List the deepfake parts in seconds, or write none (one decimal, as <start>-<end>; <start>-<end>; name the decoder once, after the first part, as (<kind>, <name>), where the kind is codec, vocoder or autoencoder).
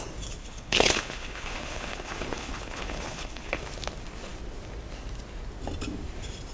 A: 0.4-3.6 (codec, HILCodec)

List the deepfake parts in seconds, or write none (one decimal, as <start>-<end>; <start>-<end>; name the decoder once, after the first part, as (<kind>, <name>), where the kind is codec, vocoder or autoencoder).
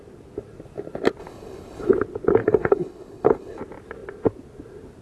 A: 1.2-1.9 (codec, HILCodec); 2.4-3.6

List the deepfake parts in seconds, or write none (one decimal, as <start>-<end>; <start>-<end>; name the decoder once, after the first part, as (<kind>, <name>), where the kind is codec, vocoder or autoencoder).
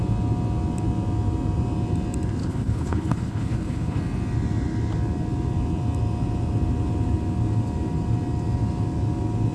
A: 2.4-4.0 (codec, HILCodec)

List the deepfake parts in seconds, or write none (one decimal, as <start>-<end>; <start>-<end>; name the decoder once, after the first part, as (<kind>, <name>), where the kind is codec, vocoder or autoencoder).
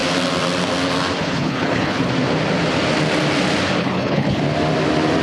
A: 1.2-2.1 (codec, HILCodec); 3.8-4.4